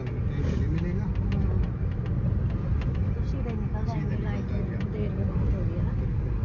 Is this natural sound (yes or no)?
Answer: yes